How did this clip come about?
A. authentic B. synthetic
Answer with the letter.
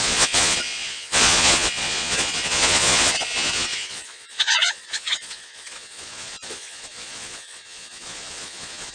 B